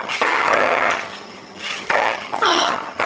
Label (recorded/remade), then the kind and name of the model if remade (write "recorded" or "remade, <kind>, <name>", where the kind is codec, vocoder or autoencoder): remade, vocoder, HiFi-GAN